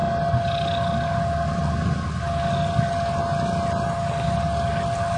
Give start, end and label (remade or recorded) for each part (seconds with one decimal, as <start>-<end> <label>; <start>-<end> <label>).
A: 0.0-5.2 recorded